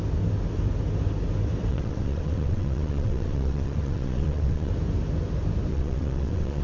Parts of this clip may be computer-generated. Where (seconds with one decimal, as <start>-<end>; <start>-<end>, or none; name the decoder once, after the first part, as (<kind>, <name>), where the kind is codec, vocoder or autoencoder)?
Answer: 1.7-4.7 (vocoder, WaveNeXt); 5.7-6.6